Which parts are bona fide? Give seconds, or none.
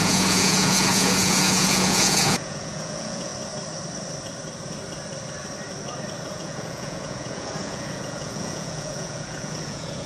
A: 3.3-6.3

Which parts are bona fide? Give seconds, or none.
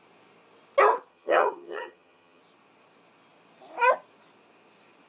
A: 0.0-1.1; 2.4-5.1